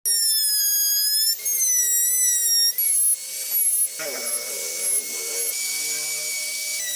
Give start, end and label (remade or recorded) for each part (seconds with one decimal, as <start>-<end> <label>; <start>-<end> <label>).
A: 0.0-7.0 recorded